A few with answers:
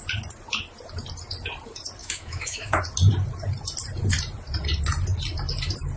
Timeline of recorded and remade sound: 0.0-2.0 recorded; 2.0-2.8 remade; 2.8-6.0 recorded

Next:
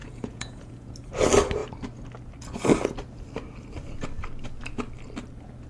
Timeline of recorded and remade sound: 0.0-0.9 remade; 0.9-5.7 recorded

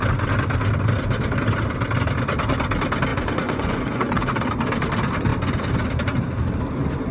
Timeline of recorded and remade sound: 0.0-3.1 recorded; 3.1-4.3 remade; 4.3-7.1 recorded

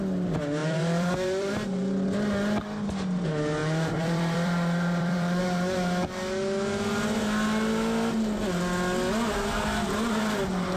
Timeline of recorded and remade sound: 0.0-0.6 recorded; 0.6-1.5 remade; 1.5-3.6 recorded; 3.6-5.4 remade; 5.4-10.8 recorded

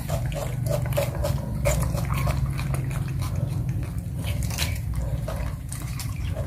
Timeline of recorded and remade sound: 0.0-5.1 recorded; 5.1-6.5 remade